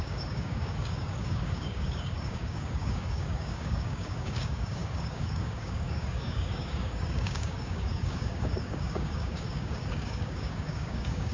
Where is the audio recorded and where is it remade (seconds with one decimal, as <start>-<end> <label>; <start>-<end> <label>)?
0.0-11.3 remade